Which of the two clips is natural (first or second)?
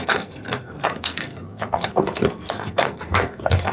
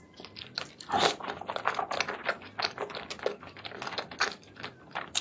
second